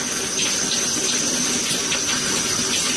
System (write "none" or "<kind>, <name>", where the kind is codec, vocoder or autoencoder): none